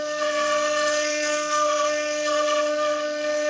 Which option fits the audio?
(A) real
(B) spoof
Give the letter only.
B